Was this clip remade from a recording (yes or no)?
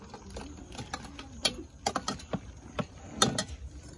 no